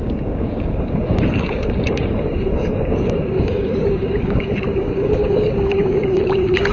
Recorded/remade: remade